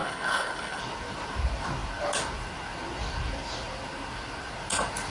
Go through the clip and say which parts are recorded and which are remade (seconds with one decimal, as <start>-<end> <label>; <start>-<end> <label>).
0.0-0.8 remade; 0.8-5.1 recorded